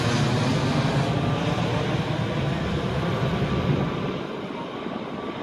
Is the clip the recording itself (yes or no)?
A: yes